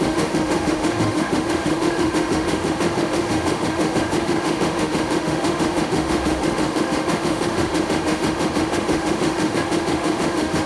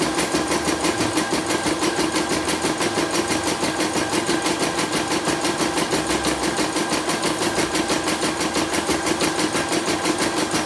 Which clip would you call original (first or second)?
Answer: second